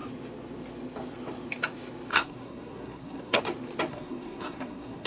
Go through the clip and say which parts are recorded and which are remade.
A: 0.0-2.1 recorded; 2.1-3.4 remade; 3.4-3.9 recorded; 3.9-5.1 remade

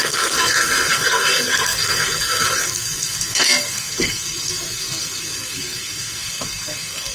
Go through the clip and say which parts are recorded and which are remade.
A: 0.0-7.1 remade

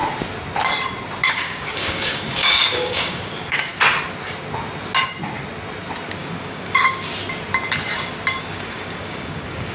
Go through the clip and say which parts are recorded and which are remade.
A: 0.0-1.3 recorded; 1.3-3.7 remade; 3.7-6.2 recorded; 6.2-7.1 remade; 7.1-8.4 recorded; 8.4-9.7 remade

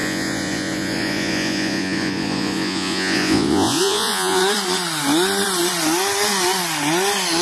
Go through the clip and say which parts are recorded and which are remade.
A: 0.0-4.4 remade; 4.4-7.4 recorded

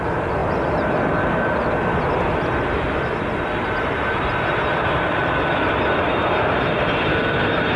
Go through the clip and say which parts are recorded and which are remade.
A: 0.0-6.2 remade; 6.2-7.2 recorded; 7.2-7.8 remade

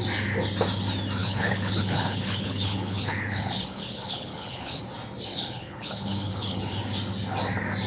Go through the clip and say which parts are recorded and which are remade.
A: 0.0-1.2 recorded; 1.2-4.8 remade; 4.8-5.3 recorded; 5.3-6.6 remade; 6.6-7.9 recorded

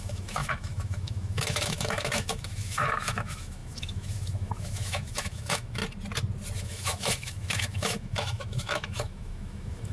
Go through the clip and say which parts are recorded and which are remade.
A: 0.0-5.8 remade; 5.8-6.6 recorded; 6.6-9.9 remade

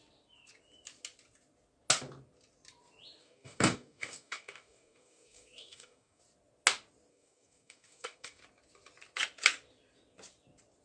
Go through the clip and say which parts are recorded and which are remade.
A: 0.0-3.2 recorded; 3.2-6.2 remade; 6.2-7.1 recorded; 7.1-8.4 remade; 8.4-10.8 recorded